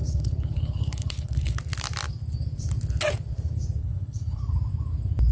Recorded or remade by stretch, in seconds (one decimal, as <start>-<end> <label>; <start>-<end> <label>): 0.0-1.6 remade; 1.6-3.8 recorded; 3.8-4.4 remade; 4.4-5.3 recorded